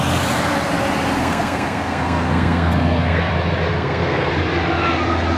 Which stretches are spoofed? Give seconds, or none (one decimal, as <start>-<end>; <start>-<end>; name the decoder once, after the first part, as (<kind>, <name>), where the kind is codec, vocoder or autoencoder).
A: 1.2-3.3 (codec, SNAC); 3.7-4.3